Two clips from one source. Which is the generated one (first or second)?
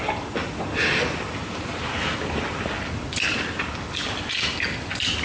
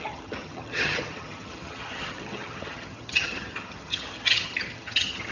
second